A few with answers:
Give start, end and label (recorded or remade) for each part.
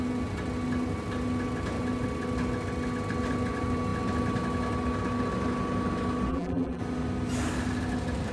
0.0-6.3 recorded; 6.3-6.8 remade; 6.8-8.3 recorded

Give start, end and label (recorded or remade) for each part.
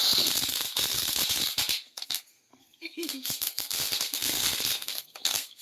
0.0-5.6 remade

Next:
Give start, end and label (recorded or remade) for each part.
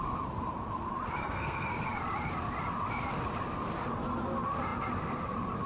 0.0-1.2 recorded; 1.2-1.7 remade; 1.7-5.7 recorded